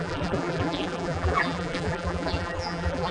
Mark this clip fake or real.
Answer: fake